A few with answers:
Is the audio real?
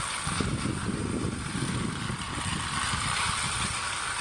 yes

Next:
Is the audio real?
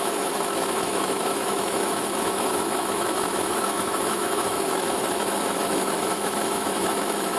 no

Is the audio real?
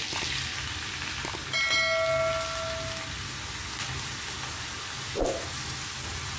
yes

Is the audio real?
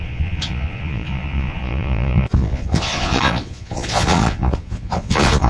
no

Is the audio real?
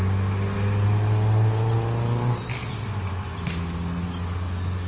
yes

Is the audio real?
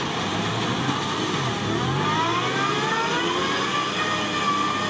yes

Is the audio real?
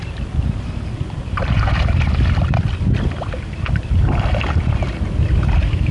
yes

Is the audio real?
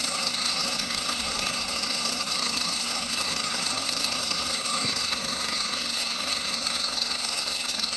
no